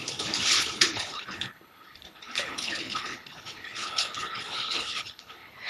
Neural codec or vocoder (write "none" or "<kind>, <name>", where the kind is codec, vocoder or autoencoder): codec, HILCodec